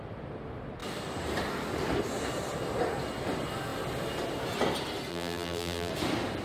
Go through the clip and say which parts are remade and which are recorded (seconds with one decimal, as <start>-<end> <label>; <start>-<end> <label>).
0.0-5.1 recorded; 5.1-5.9 remade; 5.9-6.4 recorded